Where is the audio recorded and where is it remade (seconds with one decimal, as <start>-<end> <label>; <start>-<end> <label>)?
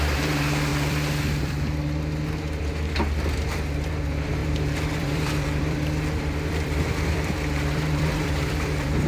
0.0-0.7 recorded; 0.7-2.0 remade; 2.0-4.4 recorded; 4.4-9.1 remade